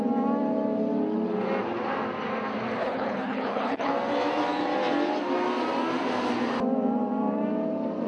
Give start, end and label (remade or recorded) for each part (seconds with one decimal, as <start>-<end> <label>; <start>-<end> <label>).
0.0-2.8 recorded; 2.8-3.9 remade; 3.9-8.1 recorded